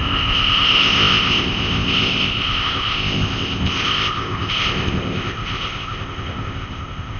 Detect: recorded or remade remade